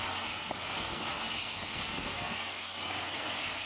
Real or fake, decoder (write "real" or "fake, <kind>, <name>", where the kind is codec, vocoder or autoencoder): fake, codec, SNAC